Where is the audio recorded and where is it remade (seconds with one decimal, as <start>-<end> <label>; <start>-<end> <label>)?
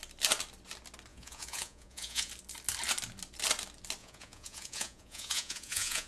0.0-1.1 recorded; 1.1-2.3 remade; 2.3-4.0 recorded; 4.0-6.1 remade